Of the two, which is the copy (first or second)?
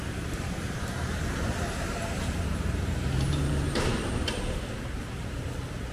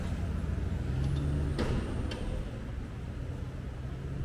first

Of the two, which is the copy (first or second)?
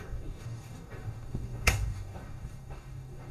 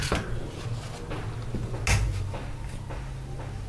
first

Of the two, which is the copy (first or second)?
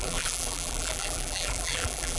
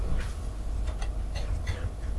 first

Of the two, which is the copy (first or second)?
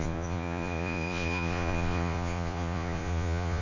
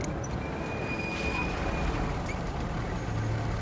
first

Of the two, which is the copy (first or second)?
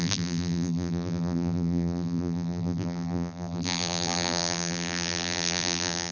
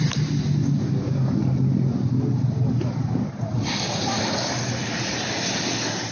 first